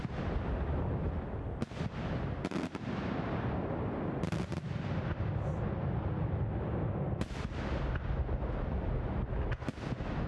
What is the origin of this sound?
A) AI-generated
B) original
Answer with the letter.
B